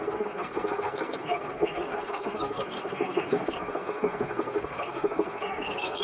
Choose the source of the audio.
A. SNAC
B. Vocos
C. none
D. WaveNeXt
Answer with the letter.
A